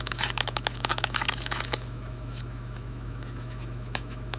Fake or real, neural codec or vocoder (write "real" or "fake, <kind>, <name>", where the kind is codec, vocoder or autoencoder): fake, autoencoder, DAC-VAE